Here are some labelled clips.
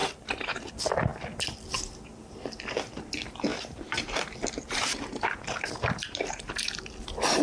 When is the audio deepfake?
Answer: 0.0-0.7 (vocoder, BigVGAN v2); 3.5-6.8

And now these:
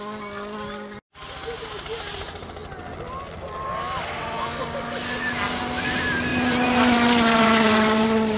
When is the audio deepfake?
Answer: 6.3-8.4 (vocoder, BigVGAN v2)

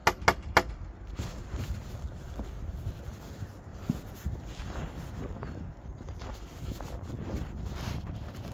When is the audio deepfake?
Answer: 3.7-4.3 (vocoder, BigVGAN v2); 5.9-6.6

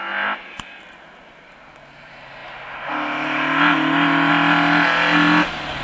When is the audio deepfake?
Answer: none

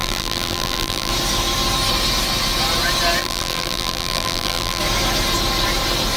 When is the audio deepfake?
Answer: 0.0-1.1 (vocoder, BigVGAN v2); 3.2-4.8

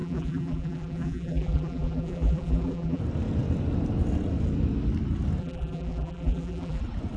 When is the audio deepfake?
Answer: 0.0-3.0 (vocoder, BigVGAN v2); 5.4-6.8